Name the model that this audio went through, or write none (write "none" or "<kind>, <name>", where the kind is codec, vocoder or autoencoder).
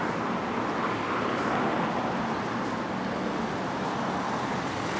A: none